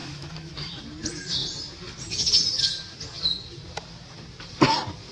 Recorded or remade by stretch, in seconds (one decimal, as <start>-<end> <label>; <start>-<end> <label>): 0.0-0.8 remade; 0.8-5.1 recorded